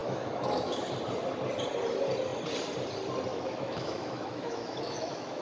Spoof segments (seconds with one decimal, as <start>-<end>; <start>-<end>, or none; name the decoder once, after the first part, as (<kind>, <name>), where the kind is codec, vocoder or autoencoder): 0.0-0.8 (autoencoder, DAC-VAE); 3.3-5.4